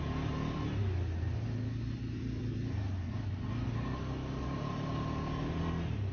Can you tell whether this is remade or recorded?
recorded